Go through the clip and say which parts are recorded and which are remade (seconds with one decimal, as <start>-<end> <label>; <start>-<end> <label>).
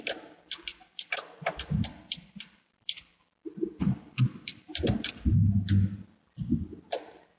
0.0-0.7 recorded; 0.7-5.1 remade; 5.1-7.4 recorded